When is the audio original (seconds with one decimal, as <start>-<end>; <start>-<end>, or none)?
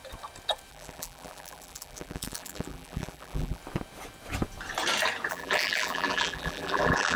0.0-0.7; 3.6-5.3